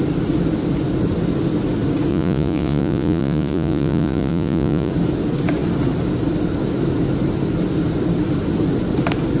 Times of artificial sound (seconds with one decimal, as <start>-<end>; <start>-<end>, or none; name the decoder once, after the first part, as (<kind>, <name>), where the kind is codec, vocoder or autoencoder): 2.1-4.9 (vocoder, Vocos)